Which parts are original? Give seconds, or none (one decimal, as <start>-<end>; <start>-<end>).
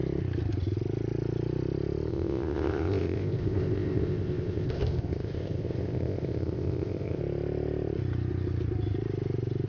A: 0.0-2.1; 7.2-9.7